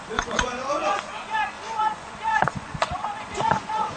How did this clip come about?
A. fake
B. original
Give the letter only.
A